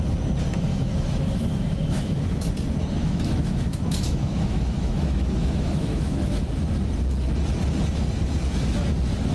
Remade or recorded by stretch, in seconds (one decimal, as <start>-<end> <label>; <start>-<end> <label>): 0.0-0.7 recorded; 0.7-2.5 remade; 2.5-3.0 recorded; 3.0-6.4 remade; 6.4-9.3 recorded